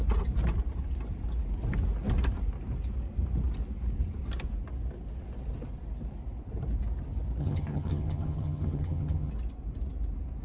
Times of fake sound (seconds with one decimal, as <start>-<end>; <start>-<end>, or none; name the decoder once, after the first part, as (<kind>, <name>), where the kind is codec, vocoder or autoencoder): 7.4-9.3 (vocoder, HiFi-GAN)